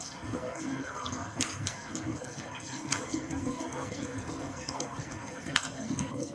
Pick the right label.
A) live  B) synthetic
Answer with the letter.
B